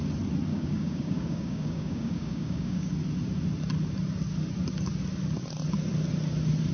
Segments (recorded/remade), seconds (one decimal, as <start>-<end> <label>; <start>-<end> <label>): 0.0-0.5 recorded; 0.5-2.9 remade; 2.9-6.7 recorded